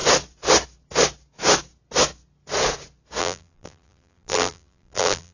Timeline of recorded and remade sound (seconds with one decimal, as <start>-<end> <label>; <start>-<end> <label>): 0.0-3.2 recorded; 3.2-5.3 remade

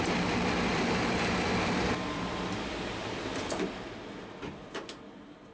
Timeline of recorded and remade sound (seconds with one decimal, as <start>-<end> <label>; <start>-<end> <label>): 0.0-0.7 recorded; 0.7-4.0 remade; 4.0-5.5 recorded

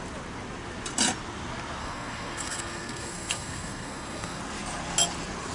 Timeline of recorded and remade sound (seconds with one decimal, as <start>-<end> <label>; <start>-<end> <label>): 0.0-1.8 recorded; 1.8-4.4 remade; 4.4-5.5 recorded

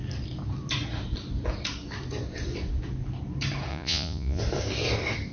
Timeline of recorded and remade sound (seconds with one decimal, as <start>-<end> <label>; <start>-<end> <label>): 0.0-3.7 recorded; 3.7-4.4 remade; 4.4-5.3 recorded

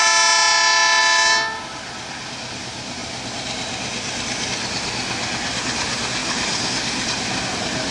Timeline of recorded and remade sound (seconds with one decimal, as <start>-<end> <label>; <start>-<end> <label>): 0.0-7.9 recorded

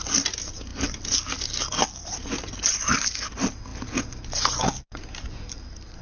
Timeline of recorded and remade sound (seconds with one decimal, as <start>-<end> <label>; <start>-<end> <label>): 0.0-6.0 recorded

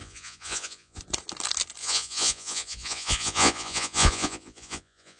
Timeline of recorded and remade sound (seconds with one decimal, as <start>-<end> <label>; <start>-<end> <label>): 0.0-1.0 remade; 1.0-1.8 recorded; 1.8-5.2 remade